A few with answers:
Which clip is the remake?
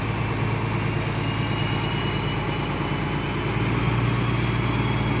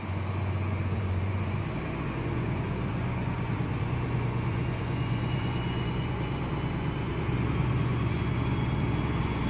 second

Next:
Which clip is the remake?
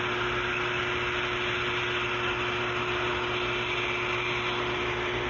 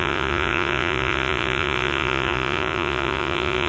second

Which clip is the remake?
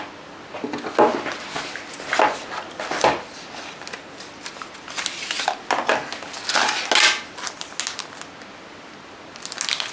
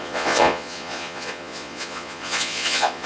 second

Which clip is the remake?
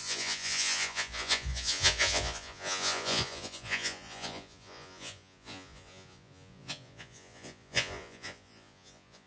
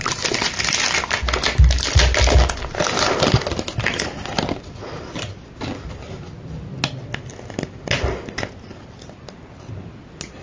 first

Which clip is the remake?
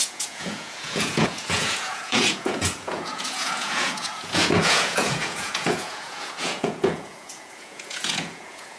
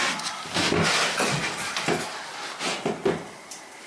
first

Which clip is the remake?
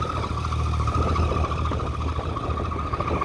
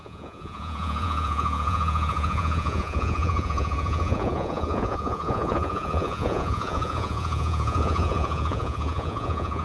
second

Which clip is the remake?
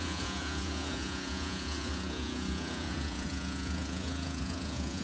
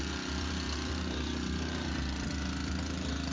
first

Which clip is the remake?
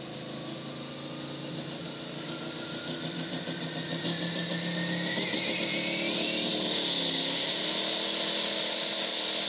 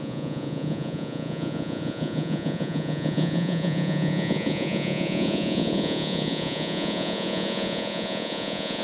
second